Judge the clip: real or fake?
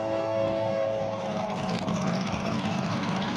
fake